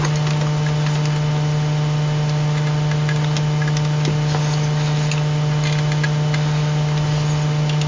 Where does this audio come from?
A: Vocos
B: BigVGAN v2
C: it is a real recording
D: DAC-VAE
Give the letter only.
C